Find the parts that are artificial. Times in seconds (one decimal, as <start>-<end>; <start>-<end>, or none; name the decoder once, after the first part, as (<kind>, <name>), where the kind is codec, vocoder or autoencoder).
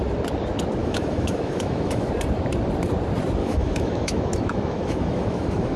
0.8-2.1 (autoencoder, DAC-VAE); 3.4-5.8